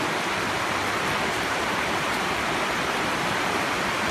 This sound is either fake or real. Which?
fake